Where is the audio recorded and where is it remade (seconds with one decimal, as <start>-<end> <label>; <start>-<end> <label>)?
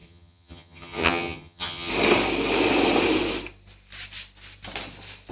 0.0-1.9 remade; 1.9-5.3 recorded